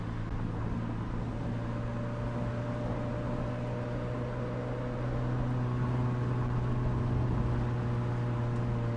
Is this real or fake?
real